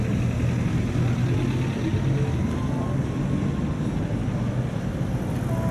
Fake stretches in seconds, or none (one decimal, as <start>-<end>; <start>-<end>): none